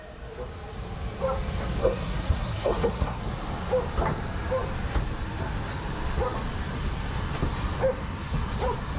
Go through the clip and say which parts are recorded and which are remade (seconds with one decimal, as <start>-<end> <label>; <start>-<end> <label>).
0.0-1.8 recorded; 1.8-3.2 remade; 3.2-9.0 recorded